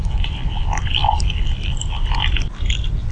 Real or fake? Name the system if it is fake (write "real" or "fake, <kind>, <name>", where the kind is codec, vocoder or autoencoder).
real